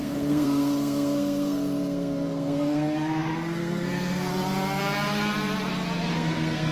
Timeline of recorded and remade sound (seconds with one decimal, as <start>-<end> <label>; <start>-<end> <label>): 0.0-4.3 remade; 4.3-6.1 recorded; 6.1-6.7 remade